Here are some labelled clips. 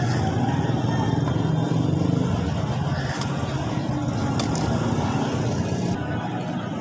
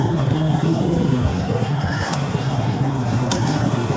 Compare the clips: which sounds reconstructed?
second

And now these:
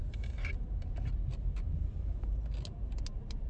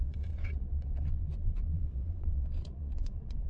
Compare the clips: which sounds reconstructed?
second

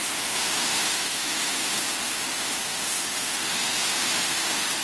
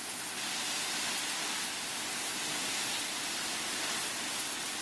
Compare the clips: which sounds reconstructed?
first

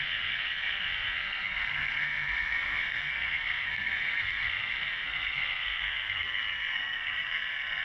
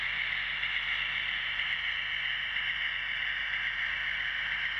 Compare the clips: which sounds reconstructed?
first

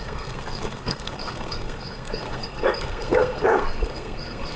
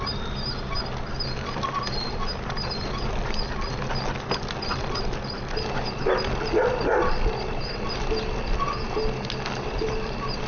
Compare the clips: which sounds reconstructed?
first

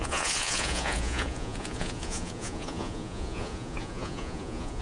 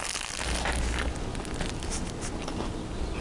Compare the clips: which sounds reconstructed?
first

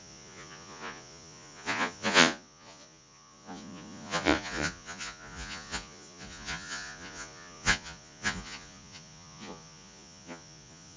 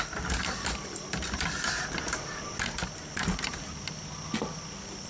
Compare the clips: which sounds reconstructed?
first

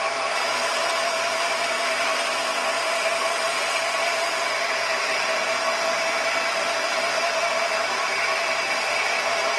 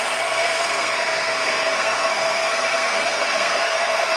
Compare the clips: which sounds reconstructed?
second